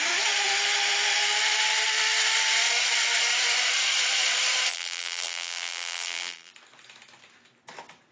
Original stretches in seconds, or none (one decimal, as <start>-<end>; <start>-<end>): 0.0-4.7; 6.5-8.1